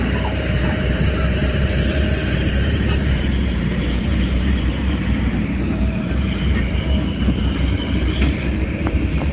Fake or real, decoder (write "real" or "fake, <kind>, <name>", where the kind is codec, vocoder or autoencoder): fake, vocoder, BigVGAN v2